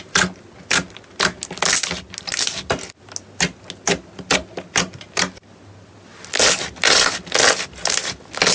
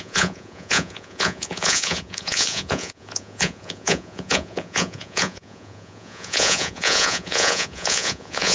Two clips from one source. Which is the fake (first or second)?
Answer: second